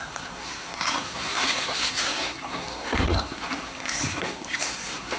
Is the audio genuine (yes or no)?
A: no